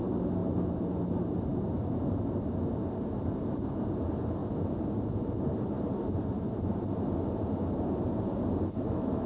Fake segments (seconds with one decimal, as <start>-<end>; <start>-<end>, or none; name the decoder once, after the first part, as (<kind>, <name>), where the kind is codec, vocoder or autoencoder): none